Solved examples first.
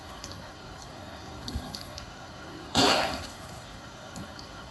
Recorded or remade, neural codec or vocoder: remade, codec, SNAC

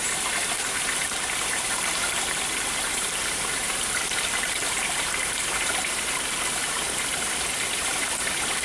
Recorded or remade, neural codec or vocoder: remade, vocoder, BigVGAN v2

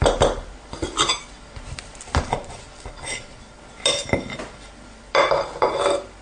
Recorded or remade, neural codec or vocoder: recorded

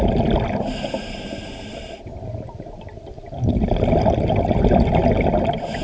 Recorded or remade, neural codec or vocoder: recorded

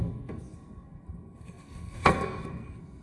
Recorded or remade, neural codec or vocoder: remade, codec, SNAC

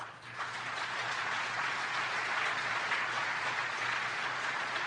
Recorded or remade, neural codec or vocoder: remade, vocoder, Vocos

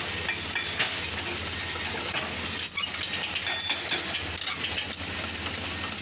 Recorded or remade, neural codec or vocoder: recorded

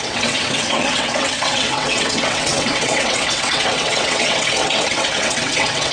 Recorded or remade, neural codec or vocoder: remade, vocoder, WaveNeXt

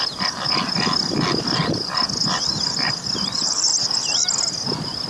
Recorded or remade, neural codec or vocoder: recorded